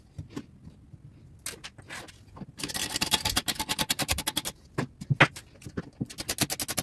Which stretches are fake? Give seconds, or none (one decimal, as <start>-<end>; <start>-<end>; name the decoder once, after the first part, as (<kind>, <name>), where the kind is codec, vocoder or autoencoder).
2.8-4.2 (vocoder, BigVGAN v2)